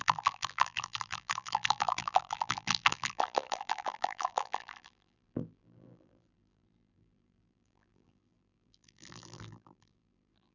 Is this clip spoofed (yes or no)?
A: yes